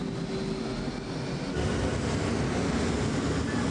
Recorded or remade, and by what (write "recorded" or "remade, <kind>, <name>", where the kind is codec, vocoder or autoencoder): recorded